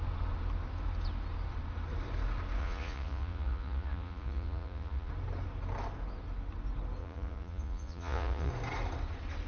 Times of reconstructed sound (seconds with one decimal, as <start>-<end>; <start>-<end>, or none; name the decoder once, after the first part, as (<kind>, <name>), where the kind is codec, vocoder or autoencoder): 2.6-5.1 (vocoder, Vocos); 7.0-8.5